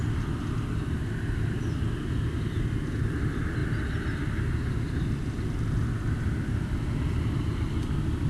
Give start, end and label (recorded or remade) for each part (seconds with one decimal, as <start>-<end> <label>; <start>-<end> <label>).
0.0-8.3 recorded